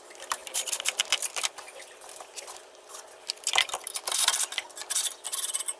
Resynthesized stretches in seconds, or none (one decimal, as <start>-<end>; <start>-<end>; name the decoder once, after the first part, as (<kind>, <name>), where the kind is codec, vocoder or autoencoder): 0.4-3.9 (vocoder, BigVGAN v2)